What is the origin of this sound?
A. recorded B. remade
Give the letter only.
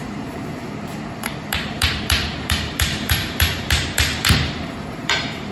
B